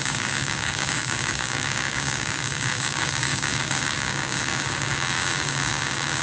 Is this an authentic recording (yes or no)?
no